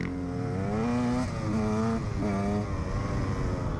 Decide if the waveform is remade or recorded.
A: recorded